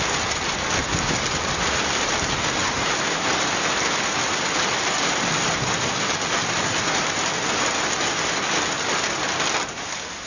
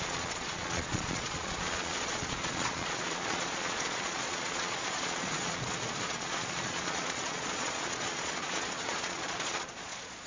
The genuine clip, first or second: first